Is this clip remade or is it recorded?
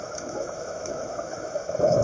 remade